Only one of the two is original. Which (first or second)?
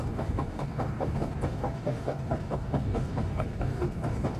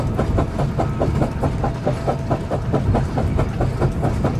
second